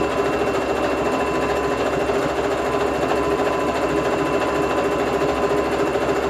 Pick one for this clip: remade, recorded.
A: recorded